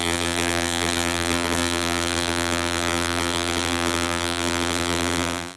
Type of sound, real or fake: fake